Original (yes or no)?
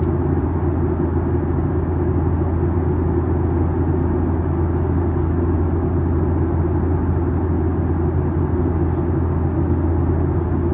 yes